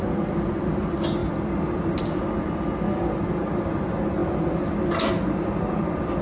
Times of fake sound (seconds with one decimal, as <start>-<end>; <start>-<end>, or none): none